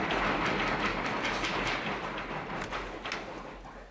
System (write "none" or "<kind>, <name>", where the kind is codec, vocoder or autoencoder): none